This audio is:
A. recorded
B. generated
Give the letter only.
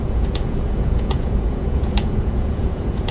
B